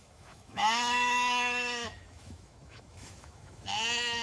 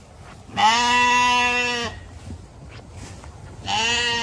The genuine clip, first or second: second